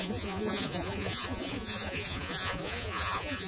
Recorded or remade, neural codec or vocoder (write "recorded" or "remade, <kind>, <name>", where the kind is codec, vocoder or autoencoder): remade, vocoder, Vocos